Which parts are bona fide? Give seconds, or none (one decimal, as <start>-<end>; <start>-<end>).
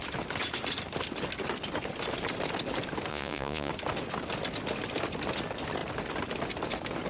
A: 0.0-3.1; 3.7-7.1